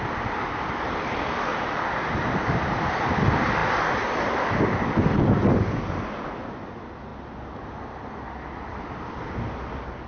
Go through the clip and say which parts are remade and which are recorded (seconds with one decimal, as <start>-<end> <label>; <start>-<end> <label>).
0.0-10.1 recorded